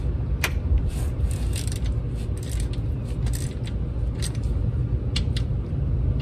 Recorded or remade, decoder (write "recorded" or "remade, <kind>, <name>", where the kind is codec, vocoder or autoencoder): recorded